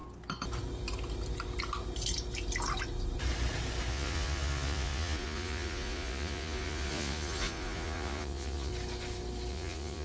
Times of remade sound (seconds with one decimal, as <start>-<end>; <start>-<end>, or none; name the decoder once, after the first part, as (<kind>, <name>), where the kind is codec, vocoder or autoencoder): 3.9-8.7 (vocoder, Vocos); 9.5-10.0